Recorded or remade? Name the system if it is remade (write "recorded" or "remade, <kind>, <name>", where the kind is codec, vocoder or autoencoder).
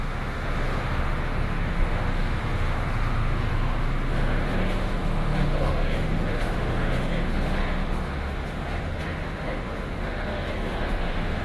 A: remade, autoencoder, DAC-VAE